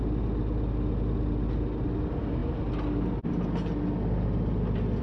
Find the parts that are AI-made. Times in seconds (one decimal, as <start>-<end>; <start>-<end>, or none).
none